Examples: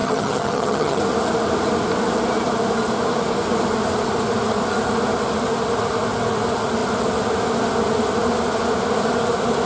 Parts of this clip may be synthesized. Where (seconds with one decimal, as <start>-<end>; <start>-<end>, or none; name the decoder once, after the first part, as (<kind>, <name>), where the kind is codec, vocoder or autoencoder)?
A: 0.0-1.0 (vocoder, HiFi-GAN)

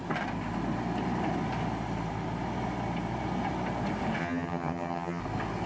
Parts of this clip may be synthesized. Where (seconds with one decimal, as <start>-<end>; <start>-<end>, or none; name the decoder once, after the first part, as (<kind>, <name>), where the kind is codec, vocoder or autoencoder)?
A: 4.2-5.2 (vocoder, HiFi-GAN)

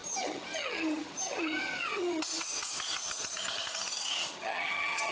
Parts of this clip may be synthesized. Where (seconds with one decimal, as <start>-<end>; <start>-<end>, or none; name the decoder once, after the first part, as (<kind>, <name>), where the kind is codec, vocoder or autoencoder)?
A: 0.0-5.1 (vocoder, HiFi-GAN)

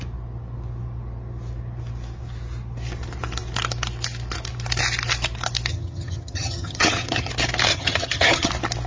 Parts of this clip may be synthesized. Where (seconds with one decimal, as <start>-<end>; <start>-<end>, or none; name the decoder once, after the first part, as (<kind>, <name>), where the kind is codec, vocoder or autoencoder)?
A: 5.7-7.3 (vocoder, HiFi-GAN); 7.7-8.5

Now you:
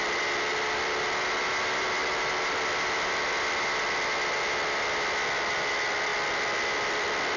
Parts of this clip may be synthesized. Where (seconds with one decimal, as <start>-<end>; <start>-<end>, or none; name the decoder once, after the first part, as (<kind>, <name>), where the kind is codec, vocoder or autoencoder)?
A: none